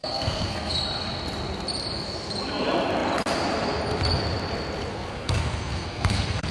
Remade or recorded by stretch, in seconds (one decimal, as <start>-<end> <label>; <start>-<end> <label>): 0.0-0.7 remade; 0.7-4.9 recorded; 4.9-6.5 remade